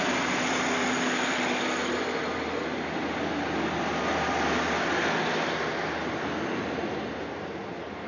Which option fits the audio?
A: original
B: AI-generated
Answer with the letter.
A